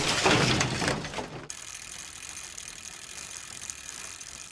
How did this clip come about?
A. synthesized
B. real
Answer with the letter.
B